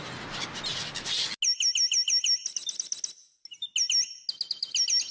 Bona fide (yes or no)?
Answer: yes